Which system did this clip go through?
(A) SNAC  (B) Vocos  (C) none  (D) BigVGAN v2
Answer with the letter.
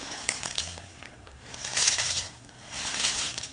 A